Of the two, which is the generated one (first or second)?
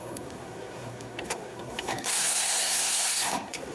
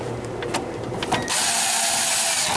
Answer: first